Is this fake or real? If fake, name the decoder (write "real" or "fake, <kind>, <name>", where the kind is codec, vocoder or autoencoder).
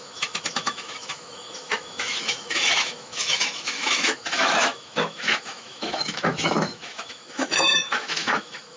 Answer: fake, autoencoder, DAC-VAE